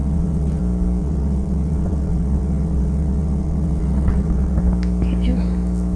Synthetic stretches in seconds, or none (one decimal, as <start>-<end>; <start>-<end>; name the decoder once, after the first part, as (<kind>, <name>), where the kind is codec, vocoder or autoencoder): 0.0-0.6 (vocoder, WaveNeXt); 1.0-4.6